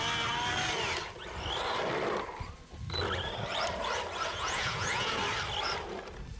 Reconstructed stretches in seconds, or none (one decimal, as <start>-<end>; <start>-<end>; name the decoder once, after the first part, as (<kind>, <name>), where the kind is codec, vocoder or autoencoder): 4.3-5.2 (vocoder, Vocos)